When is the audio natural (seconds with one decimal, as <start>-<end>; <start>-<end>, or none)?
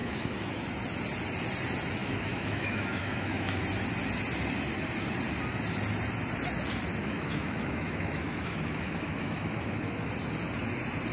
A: 0.5-2.0; 3.6-7.0; 10.1-11.1